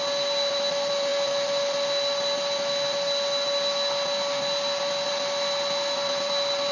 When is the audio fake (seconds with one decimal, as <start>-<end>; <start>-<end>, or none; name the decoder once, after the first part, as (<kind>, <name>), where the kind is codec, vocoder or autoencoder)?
none

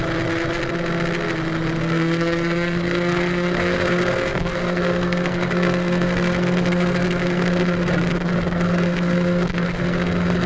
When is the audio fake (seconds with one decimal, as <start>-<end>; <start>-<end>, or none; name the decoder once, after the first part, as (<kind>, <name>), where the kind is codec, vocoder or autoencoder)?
1.8-10.5 (codec, SNAC)

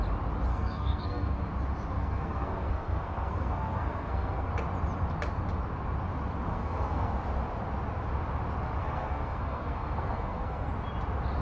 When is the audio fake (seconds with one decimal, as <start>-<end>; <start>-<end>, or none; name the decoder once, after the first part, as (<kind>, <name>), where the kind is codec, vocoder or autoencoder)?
0.5-1.4 (codec, SNAC); 2.0-4.5; 6.5-7.1; 8.8-10.7

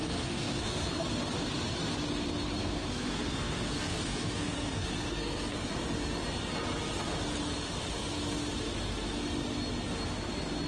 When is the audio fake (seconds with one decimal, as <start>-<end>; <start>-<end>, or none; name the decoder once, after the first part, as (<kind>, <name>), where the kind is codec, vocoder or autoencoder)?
0.0-0.9 (codec, SNAC); 2.6-5.7

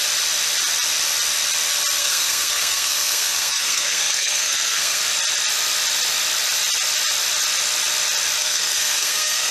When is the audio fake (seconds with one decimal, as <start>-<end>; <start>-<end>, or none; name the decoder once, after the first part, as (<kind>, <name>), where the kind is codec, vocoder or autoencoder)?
2.0-5.0 (codec, SNAC); 8.4-9.5

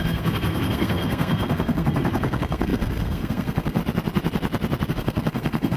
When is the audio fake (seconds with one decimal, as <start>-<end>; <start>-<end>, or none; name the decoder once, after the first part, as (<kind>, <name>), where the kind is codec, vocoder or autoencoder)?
0.0-3.8 (codec, SNAC); 4.9-5.8

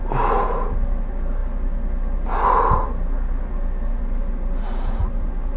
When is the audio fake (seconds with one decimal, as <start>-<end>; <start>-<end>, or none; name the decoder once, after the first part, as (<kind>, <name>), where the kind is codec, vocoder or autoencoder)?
none

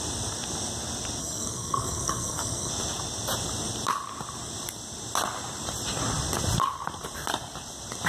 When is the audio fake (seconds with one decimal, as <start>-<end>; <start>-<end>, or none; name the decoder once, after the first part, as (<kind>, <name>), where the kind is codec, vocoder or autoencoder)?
1.2-2.7 (codec, SNAC)